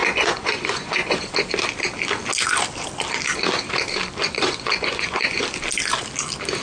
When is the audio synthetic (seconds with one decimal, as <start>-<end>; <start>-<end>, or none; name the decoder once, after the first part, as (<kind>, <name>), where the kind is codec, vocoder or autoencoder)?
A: 0.0-1.3 (vocoder, Vocos); 4.2-5.4